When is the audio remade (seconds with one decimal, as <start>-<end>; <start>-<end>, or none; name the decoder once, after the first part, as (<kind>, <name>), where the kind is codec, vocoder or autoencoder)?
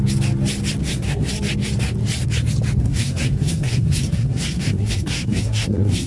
0.8-1.3 (codec, SNAC); 2.8-6.1